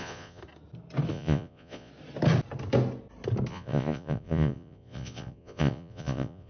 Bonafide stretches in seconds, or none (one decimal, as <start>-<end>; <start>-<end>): 0.4-1.1; 1.9-3.5